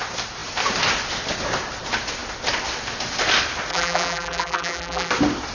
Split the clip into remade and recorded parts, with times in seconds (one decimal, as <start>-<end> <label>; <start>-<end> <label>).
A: 0.0-3.7 recorded; 3.7-5.1 remade; 5.1-5.5 recorded